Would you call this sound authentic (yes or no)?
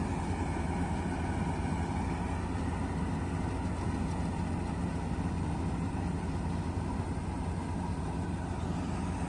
yes